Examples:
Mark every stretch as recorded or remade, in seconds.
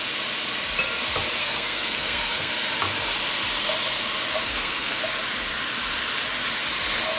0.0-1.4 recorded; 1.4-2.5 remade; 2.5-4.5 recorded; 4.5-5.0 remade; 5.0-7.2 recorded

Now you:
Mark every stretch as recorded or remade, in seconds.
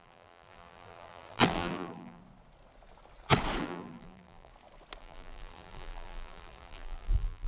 0.0-2.2 remade; 2.2-3.6 recorded; 3.6-4.5 remade; 4.5-5.0 recorded; 5.0-7.5 remade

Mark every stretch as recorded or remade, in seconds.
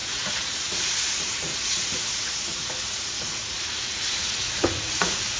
0.0-5.4 remade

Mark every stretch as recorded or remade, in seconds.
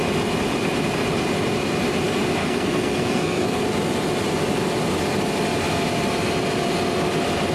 0.0-2.4 recorded; 2.4-3.6 remade; 3.6-7.5 recorded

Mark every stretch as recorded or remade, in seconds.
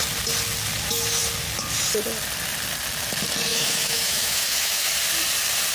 0.0-3.5 recorded; 3.5-4.9 remade; 4.9-5.7 recorded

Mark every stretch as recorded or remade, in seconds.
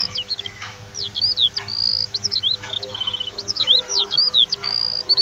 0.0-0.8 remade; 0.8-1.9 recorded; 1.9-5.2 remade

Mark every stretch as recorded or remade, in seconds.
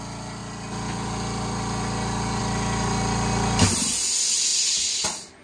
0.0-5.4 recorded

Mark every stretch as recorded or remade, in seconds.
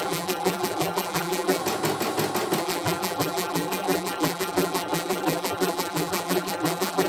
0.0-1.6 remade; 1.6-2.6 recorded; 2.6-7.1 remade